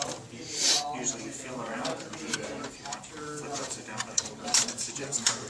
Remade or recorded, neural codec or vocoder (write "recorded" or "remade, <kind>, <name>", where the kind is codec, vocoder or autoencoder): remade, vocoder, BigVGAN v2